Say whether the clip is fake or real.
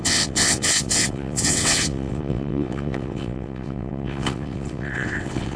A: fake